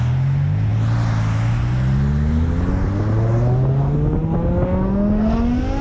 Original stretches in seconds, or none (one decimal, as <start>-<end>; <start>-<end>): 0.0-5.8